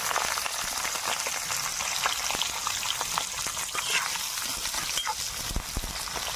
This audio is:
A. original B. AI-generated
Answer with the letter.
A